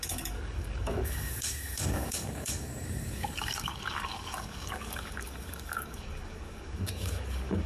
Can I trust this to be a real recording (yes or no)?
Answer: no